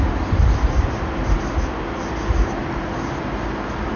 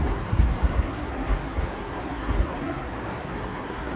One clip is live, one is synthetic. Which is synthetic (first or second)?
second